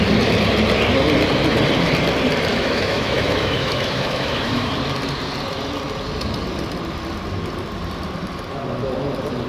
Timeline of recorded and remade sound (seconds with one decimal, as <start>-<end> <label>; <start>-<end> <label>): 0.0-2.5 recorded; 2.5-4.7 remade; 4.7-9.5 recorded